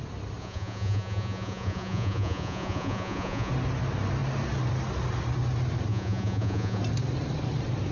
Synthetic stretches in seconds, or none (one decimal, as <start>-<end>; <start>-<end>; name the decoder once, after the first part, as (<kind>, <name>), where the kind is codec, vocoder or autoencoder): 0.4-3.5 (vocoder, Vocos); 5.9-6.8